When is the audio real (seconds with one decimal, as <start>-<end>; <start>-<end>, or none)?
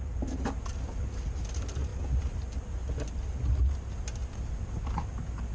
0.0-5.5